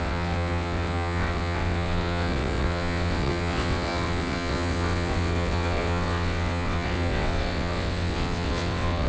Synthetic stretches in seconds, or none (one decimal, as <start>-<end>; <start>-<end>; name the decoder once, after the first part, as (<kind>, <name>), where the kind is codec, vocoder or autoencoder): 0.0-9.1 (vocoder, WaveNeXt)